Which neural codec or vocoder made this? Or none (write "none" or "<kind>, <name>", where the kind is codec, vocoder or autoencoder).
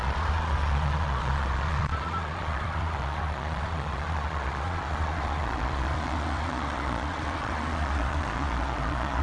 vocoder, Vocos